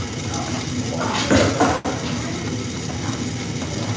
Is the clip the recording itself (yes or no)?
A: yes